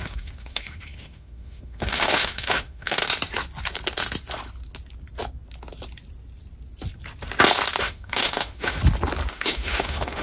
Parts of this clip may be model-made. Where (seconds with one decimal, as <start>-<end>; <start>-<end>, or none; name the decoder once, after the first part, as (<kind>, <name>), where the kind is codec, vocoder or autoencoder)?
0.0-3.0 (autoencoder, DAC-VAE); 7.8-8.8; 9.3-10.2